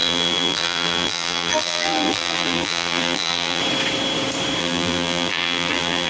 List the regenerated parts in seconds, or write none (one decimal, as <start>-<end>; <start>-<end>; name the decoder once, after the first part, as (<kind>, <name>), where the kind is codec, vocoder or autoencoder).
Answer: 0.0-3.6 (vocoder, BigVGAN v2); 4.6-6.1